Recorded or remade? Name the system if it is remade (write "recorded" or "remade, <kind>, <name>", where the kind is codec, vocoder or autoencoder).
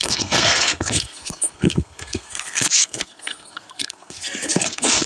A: remade, codec, SNAC